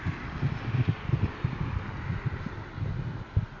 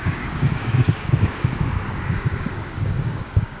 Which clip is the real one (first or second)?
first